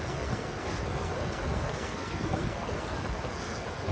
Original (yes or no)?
no